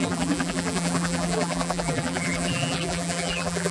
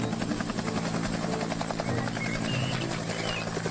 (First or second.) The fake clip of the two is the first